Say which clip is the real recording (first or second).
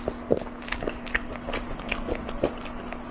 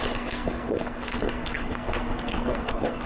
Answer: first